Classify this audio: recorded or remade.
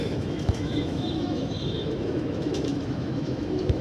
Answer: remade